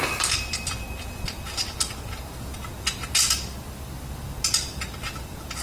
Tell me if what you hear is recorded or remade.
recorded